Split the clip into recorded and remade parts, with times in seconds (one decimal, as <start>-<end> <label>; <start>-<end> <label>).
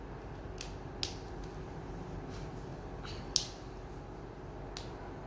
0.0-5.3 recorded